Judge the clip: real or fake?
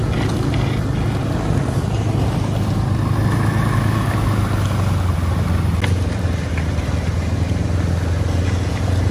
real